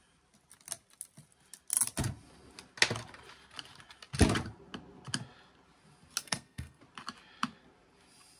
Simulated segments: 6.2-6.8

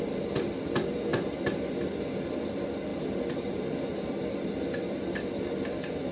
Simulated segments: none

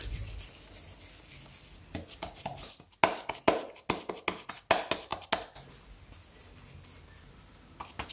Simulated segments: none

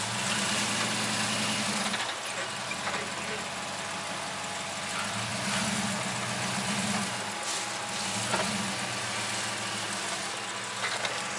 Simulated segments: none

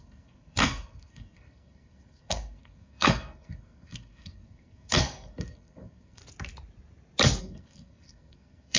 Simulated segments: 0.0-6.2; 7.4-8.8

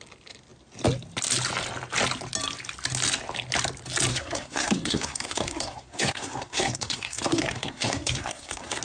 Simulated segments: 4.1-8.8

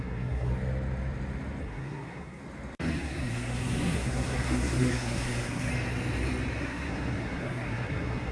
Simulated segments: 0.0-0.5; 1.6-2.4; 2.9-5.7; 6.6-8.3